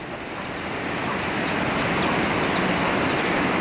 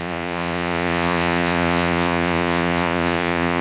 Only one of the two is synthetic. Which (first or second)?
second